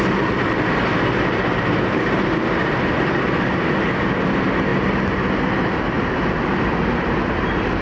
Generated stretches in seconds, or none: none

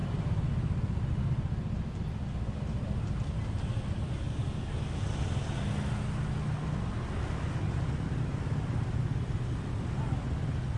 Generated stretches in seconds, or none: 4.2-4.7 (codec, DAC)

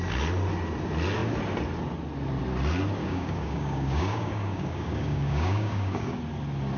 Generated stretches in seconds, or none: 3.0-6.2 (codec, DAC)